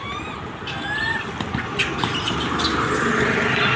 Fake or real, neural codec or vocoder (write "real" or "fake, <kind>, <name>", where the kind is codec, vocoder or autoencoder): real